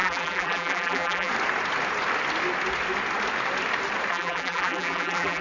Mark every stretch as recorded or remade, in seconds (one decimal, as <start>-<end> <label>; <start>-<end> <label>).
0.0-1.3 remade; 1.3-4.1 recorded; 4.1-5.4 remade